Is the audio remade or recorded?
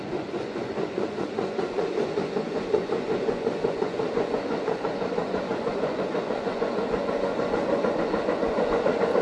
remade